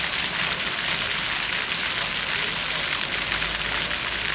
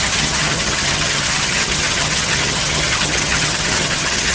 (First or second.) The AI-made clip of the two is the second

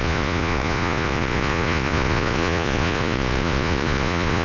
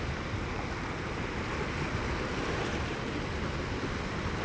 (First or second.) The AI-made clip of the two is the first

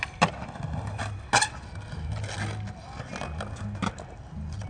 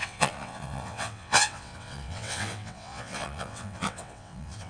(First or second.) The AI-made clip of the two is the second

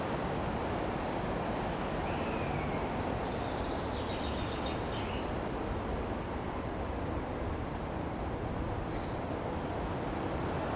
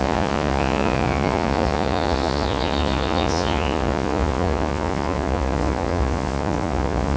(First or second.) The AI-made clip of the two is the second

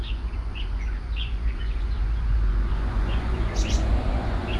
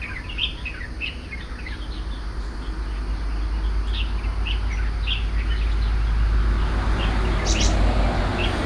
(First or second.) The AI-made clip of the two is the first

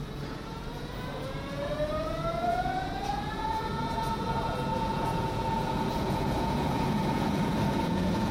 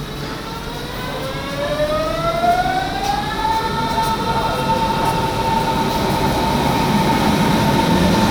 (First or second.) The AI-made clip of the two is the first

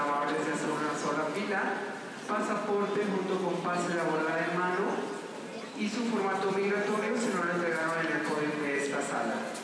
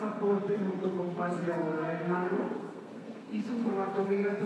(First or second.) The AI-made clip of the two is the second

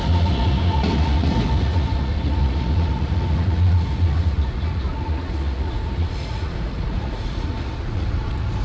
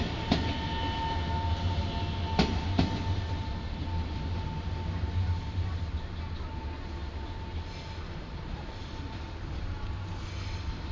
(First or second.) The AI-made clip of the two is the first